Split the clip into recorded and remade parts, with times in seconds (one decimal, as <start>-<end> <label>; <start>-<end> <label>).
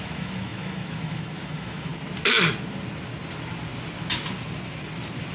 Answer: 0.0-1.9 remade; 1.9-5.3 recorded